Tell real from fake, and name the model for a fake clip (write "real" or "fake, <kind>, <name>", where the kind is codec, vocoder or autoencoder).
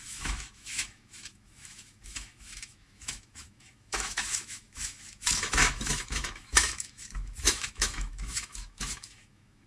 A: fake, autoencoder, DAC-VAE